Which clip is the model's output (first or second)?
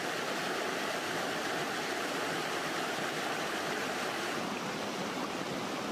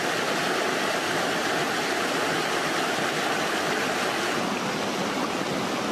first